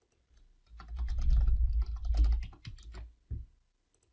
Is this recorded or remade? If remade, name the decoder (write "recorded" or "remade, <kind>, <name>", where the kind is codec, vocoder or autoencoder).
recorded